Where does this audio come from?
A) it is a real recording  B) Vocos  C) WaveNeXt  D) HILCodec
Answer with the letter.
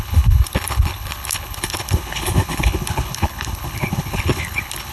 D